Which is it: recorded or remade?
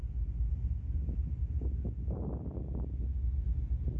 recorded